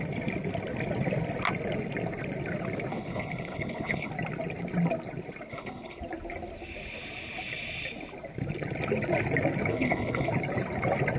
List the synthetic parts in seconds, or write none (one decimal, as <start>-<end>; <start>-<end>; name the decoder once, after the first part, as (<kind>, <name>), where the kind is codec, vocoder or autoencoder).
2.9-4.1 (codec, HILCodec); 5.5-6.0; 9.7-10.3